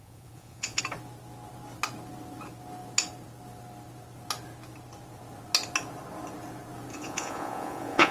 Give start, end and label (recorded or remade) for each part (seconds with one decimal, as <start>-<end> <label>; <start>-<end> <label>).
0.0-0.8 remade; 0.8-6.9 recorded; 6.9-8.1 remade